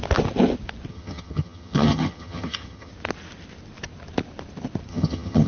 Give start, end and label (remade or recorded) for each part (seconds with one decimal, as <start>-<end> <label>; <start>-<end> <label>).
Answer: 0.0-0.9 recorded; 0.9-2.9 remade; 2.9-4.9 recorded; 4.9-5.5 remade